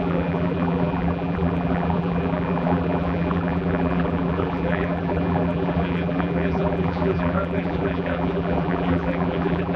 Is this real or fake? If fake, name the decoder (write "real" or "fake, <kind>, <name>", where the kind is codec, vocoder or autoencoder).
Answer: fake, vocoder, BigVGAN v2